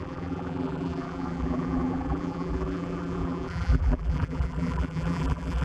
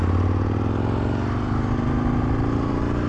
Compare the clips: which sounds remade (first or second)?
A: first